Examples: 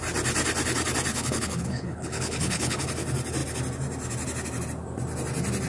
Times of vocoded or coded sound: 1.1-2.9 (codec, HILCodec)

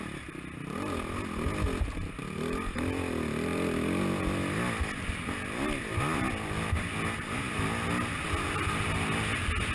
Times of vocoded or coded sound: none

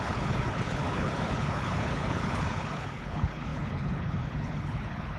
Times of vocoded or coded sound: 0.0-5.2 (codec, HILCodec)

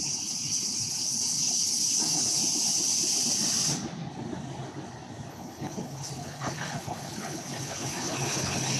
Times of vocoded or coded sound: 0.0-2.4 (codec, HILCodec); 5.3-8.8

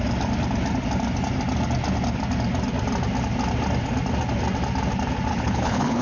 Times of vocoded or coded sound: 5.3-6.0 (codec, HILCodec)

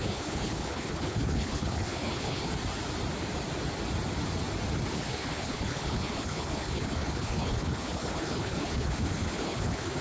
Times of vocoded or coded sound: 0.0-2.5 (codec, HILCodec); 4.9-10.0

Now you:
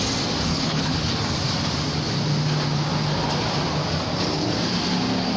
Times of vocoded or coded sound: 0.5-1.1 (codec, HILCodec)

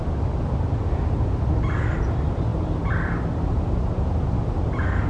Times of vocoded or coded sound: none